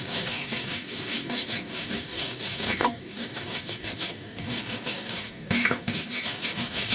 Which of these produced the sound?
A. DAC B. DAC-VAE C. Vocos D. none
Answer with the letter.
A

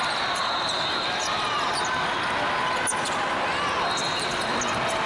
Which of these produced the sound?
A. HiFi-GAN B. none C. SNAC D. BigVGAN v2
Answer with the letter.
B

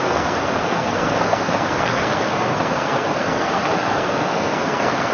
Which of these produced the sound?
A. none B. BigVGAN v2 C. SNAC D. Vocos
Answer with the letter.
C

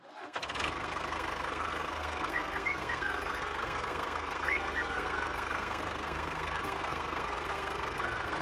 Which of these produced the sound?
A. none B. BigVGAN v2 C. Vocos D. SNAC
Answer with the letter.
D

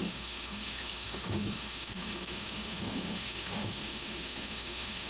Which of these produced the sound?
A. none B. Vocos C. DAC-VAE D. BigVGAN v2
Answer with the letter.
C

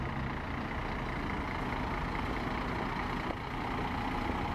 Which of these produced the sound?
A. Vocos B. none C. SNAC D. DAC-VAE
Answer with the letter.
B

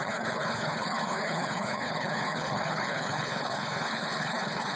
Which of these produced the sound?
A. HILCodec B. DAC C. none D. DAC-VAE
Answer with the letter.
A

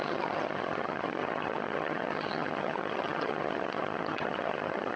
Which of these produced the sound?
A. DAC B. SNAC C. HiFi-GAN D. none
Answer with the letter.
C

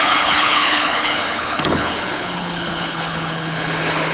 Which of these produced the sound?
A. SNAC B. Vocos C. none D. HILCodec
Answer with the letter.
D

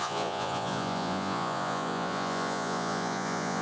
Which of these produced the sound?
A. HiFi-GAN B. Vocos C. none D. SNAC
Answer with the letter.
B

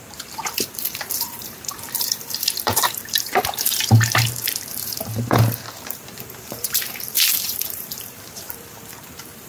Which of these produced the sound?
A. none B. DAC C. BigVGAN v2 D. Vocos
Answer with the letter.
C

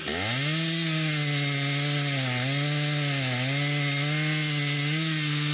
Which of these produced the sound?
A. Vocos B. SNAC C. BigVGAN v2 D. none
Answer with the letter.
D